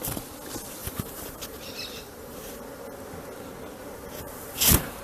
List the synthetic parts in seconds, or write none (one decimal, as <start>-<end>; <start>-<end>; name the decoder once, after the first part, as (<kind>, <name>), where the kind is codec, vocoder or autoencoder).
0.8-2.6 (vocoder, BigVGAN v2); 3.8-5.0